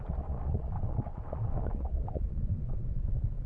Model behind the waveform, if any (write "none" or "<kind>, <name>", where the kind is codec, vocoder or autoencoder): vocoder, Vocos